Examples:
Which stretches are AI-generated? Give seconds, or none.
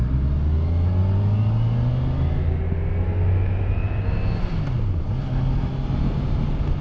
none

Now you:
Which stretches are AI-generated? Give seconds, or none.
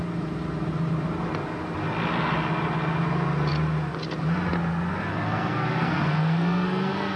5.1-7.2 (codec, SNAC)